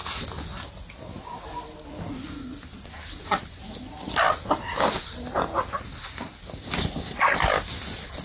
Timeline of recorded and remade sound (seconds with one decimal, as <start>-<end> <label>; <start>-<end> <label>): 0.0-8.2 recorded